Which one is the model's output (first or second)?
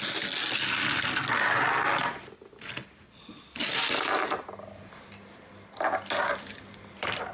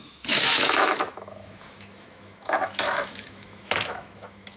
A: second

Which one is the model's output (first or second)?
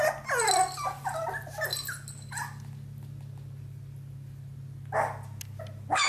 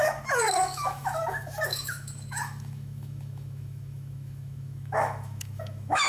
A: second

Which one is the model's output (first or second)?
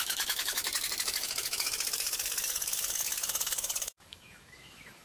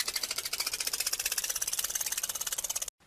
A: first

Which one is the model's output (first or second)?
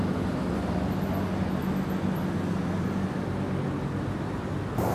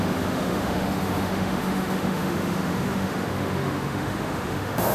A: second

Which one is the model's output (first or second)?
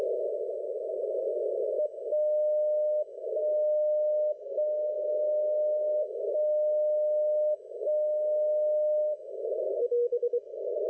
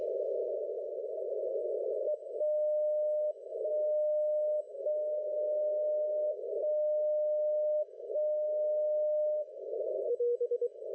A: second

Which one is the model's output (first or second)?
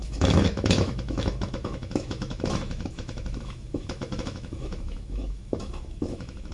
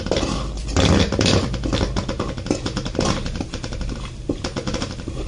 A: first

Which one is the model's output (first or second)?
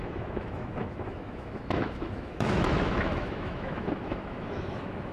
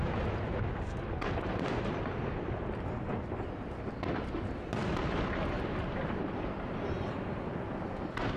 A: first